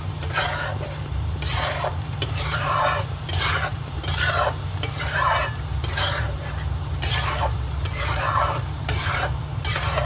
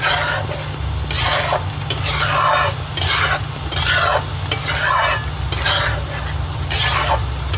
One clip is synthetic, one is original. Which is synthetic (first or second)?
first